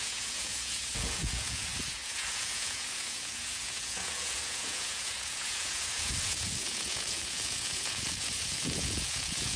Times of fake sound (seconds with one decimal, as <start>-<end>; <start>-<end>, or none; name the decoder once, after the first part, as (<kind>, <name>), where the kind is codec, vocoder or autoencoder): 0.0-9.6 (vocoder, Vocos)